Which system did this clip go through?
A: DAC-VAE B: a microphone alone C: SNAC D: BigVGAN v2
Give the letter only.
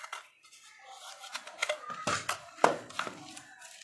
B